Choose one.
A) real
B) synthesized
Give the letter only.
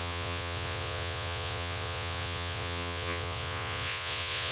B